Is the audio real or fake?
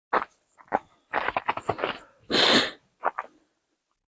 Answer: real